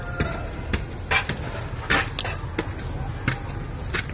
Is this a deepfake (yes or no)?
no